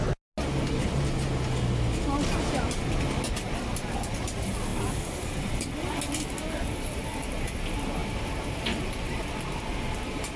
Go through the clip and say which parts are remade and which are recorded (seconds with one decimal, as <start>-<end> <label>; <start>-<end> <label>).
0.0-10.4 recorded